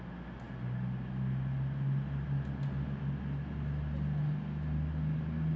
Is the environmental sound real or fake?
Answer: real